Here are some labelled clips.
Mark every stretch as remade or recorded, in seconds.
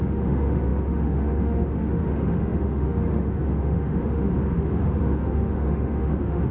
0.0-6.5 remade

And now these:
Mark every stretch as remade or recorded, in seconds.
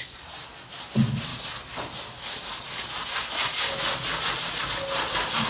0.0-5.5 recorded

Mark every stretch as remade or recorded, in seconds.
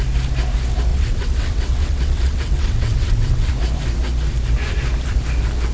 0.0-0.9 recorded; 0.9-3.5 remade; 3.5-5.7 recorded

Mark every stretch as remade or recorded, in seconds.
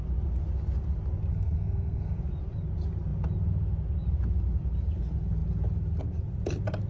0.0-1.3 recorded; 1.3-2.2 remade; 2.2-6.9 recorded